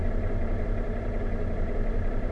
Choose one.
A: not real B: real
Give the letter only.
A